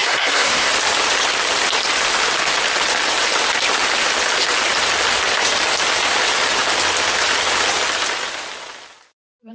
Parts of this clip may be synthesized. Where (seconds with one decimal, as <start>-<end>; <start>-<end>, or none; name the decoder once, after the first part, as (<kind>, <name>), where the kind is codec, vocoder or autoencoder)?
0.0-0.7 (codec, SNAC)